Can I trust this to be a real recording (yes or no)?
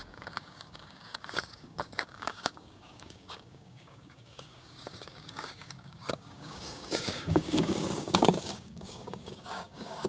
no